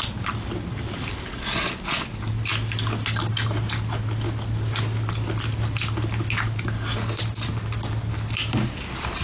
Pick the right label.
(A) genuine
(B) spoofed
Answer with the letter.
A